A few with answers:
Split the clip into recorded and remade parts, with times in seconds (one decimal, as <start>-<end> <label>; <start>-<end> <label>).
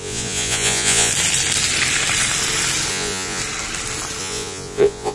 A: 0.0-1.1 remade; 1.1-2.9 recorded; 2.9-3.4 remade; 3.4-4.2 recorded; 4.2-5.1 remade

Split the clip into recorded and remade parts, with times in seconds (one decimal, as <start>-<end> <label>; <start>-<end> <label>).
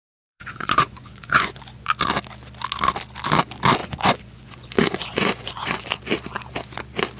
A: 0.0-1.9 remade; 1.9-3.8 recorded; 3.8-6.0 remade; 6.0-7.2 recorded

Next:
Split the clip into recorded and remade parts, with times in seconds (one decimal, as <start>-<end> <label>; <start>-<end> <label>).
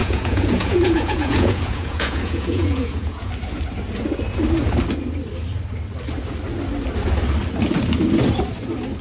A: 0.0-3.3 remade; 3.3-9.0 recorded